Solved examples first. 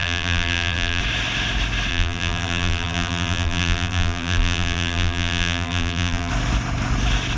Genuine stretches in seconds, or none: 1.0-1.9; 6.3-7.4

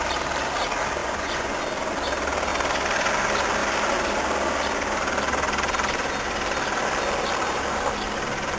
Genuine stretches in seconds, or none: 0.0-1.0; 1.6-8.6

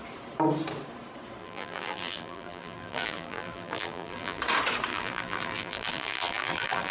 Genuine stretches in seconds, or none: 0.0-1.4; 4.4-4.9

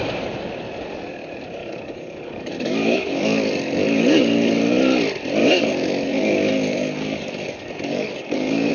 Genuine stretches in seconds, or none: 0.0-1.6; 4.5-5.4